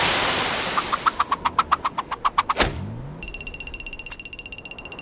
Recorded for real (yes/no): yes